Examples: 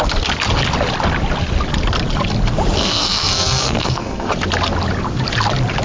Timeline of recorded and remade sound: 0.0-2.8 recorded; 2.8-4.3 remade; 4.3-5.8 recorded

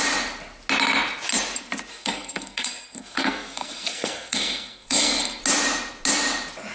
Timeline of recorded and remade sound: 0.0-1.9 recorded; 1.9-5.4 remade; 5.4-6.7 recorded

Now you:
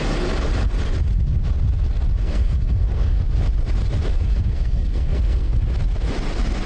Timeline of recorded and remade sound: 0.0-2.2 recorded; 2.2-3.2 remade; 3.2-4.1 recorded; 4.1-5.6 remade; 5.6-6.7 recorded

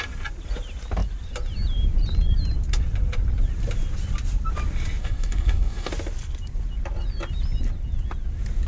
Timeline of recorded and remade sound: 0.0-5.0 recorded; 5.0-5.9 remade; 5.9-8.7 recorded

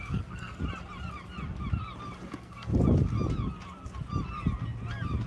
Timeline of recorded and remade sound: 0.0-0.6 remade; 0.6-2.3 recorded; 2.3-2.7 remade; 2.7-5.3 recorded